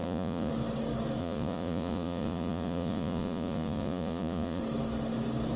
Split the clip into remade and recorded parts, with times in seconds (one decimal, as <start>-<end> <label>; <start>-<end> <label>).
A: 0.0-0.5 remade; 0.5-1.2 recorded; 1.2-4.6 remade; 4.6-5.6 recorded